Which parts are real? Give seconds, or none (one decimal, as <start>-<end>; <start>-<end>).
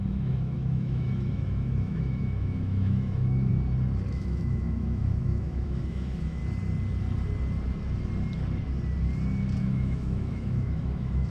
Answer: 3.5-4.1; 6.4-9.6